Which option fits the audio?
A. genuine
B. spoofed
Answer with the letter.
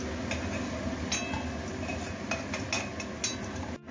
A